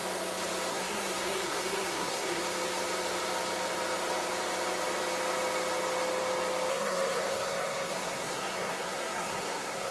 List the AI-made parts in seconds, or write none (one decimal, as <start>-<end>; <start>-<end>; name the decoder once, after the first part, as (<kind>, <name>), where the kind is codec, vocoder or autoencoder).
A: 0.7-2.4 (codec, SNAC); 6.7-9.9